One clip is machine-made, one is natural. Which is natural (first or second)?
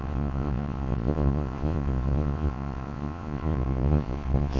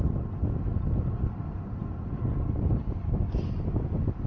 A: second